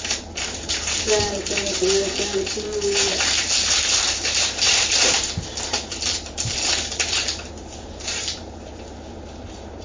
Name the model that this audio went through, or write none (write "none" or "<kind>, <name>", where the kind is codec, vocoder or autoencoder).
vocoder, BigVGAN v2